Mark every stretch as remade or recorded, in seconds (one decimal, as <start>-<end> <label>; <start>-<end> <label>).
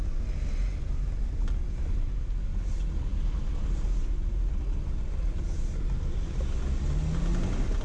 0.0-7.8 recorded